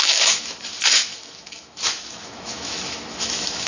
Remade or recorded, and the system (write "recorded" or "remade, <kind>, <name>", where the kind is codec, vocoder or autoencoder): remade, autoencoder, DAC-VAE